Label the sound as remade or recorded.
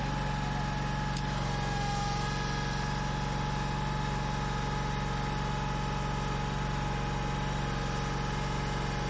recorded